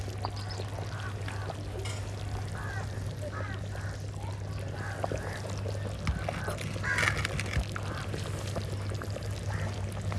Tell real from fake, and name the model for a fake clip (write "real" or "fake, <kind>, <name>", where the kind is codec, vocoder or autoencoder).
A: real